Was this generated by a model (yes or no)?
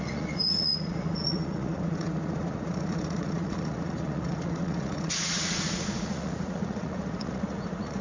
yes